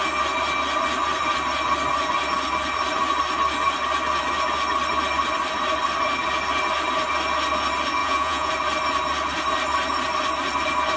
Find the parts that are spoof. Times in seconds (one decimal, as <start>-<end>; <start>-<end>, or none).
8.0-8.5